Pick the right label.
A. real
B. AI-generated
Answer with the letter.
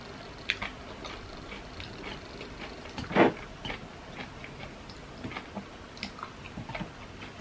A